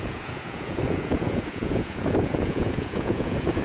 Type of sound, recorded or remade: remade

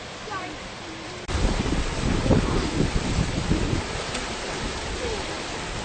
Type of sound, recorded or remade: recorded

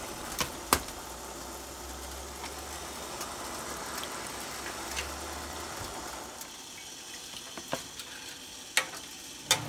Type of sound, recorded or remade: recorded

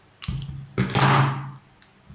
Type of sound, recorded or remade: recorded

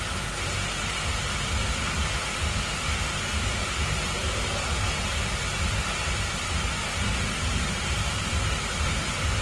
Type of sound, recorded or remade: recorded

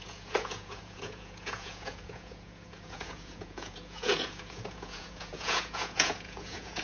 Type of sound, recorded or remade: remade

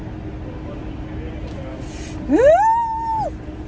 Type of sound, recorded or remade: recorded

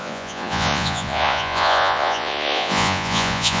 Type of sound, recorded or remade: remade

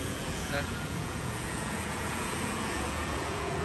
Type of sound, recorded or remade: remade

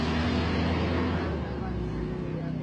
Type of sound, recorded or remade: recorded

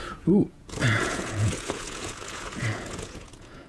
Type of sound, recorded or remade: remade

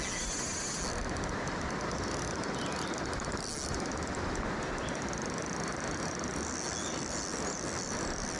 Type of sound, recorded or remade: recorded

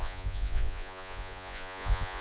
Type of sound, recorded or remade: remade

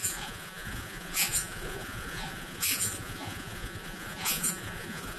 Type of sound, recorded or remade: remade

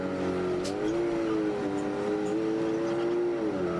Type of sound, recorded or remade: recorded